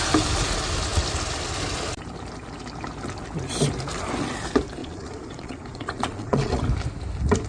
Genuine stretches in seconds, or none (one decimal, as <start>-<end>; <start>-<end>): 0.0-4.8; 6.6-7.5